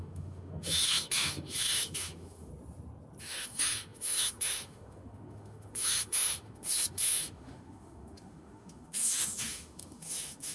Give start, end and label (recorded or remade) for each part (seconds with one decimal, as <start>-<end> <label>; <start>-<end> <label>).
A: 0.0-2.5 remade; 2.5-3.2 recorded; 3.2-10.5 remade